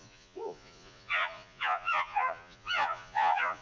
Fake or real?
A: fake